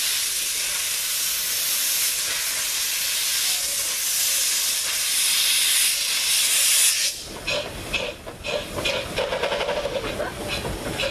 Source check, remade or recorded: recorded